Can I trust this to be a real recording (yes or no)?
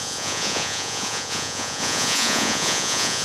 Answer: no